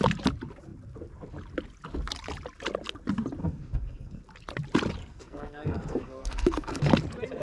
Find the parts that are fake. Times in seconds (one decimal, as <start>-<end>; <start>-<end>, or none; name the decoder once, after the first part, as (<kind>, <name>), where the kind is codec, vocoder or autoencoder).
3.4-4.2 (codec, SNAC); 5.0-6.9